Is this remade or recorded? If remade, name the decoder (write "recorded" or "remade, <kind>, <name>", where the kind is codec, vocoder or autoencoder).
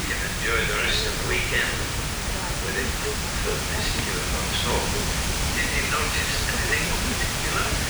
remade, vocoder, BigVGAN v2